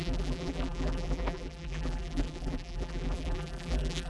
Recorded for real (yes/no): no